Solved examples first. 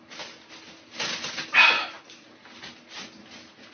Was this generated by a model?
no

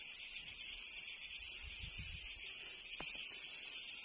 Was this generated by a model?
no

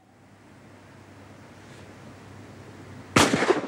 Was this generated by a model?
no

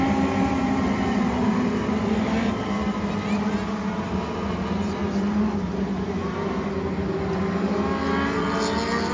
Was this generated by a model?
no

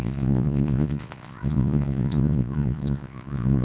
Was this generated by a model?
yes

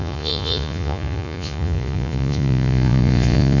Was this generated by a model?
yes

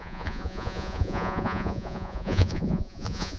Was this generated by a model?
yes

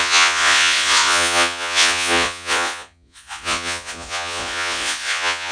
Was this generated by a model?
yes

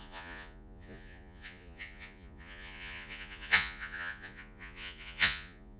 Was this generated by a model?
yes